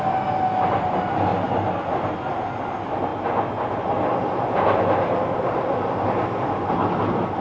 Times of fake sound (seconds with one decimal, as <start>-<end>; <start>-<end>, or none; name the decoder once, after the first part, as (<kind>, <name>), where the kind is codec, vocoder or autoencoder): none